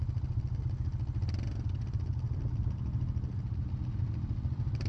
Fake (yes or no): no